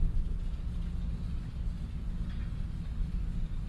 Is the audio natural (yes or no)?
yes